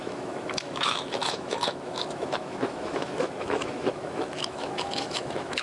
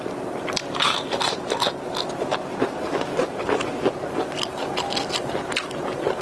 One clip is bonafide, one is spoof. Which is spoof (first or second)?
first